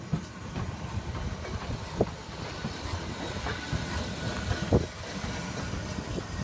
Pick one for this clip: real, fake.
real